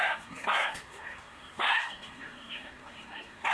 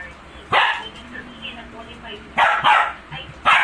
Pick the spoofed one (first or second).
first